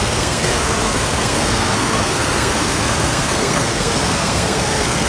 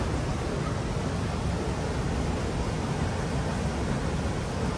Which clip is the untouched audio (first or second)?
second